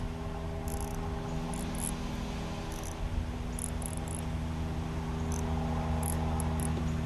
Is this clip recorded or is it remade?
recorded